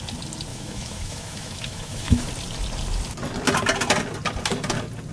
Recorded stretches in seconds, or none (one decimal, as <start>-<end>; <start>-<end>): 0.0-0.5; 2.3-5.1